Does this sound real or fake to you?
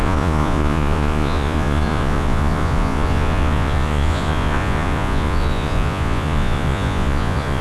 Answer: fake